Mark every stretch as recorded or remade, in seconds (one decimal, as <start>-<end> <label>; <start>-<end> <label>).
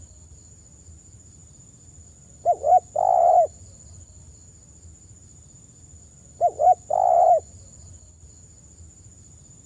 0.0-9.7 recorded